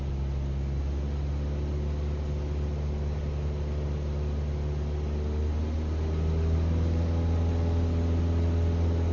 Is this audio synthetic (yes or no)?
no